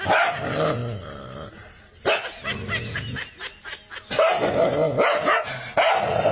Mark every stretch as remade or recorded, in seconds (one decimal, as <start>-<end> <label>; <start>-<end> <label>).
0.0-6.3 recorded